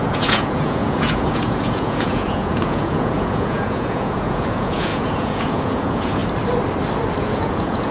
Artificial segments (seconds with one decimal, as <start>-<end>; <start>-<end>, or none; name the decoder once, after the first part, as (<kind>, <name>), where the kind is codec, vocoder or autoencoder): 0.0-6.2 (vocoder, Vocos); 7.2-7.9